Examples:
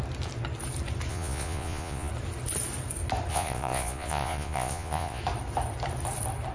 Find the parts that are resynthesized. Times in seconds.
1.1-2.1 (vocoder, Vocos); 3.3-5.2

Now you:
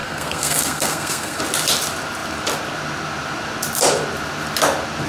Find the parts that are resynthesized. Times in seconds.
0.0-1.4 (codec, SNAC)

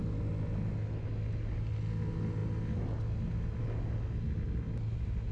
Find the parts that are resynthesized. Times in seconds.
none

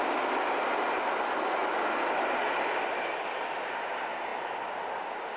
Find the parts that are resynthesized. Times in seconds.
none

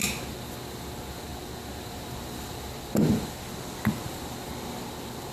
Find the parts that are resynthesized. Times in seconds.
none

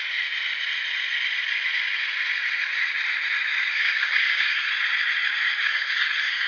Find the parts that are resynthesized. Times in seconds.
3.7-4.7 (codec, SNAC); 5.6-6.5

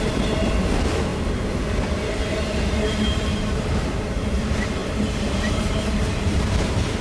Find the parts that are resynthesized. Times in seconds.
0.0-1.1 (vocoder, BigVGAN v2); 2.4-7.0

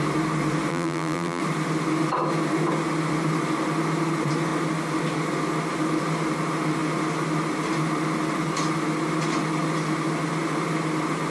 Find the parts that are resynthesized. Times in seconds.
0.7-1.4 (vocoder, BigVGAN v2)